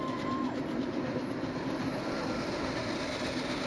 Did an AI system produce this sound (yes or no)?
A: no